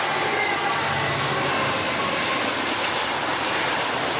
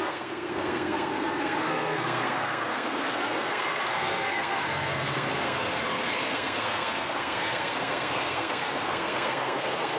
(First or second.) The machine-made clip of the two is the second